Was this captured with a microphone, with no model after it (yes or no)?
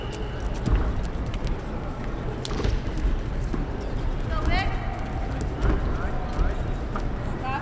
yes